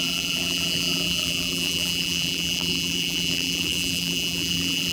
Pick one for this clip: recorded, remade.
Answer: remade